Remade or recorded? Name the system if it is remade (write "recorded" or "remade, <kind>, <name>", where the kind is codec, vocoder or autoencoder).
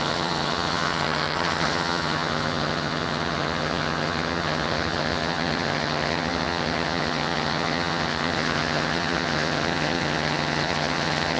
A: remade, vocoder, HiFi-GAN